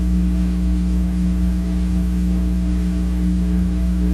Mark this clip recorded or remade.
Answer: remade